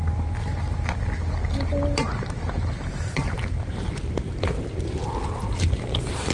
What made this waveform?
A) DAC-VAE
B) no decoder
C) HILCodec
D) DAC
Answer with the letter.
B